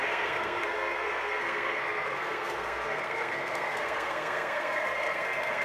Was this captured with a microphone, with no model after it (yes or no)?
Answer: no